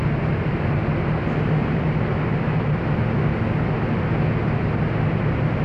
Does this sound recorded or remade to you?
recorded